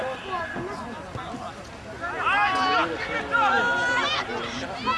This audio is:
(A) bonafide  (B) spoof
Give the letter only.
A